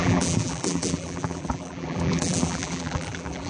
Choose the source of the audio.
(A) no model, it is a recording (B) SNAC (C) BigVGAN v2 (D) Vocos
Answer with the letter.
C